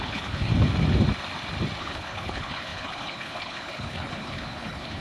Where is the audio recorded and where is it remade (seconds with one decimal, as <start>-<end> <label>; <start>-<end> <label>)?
0.0-0.5 remade; 0.5-1.8 recorded; 1.8-5.0 remade